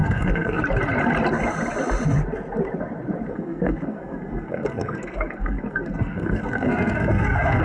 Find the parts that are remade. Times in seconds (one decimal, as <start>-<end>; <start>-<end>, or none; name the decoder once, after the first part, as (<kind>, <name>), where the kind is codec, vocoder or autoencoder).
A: 0.0-0.6 (codec, SNAC); 3.3-7.6